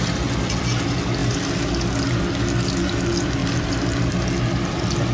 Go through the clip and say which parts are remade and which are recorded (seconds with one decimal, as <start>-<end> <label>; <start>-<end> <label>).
0.0-5.1 recorded